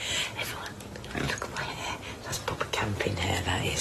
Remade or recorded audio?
remade